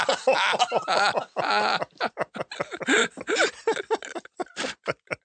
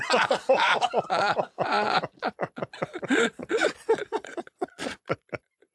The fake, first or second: second